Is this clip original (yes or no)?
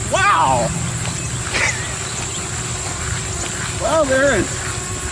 yes